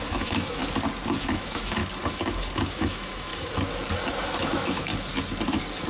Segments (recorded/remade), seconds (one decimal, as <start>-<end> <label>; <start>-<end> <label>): 0.0-0.6 remade; 0.6-1.2 recorded; 1.2-1.8 remade; 1.8-2.7 recorded; 2.7-3.3 remade; 3.3-4.4 recorded; 4.4-4.9 remade; 4.9-5.9 recorded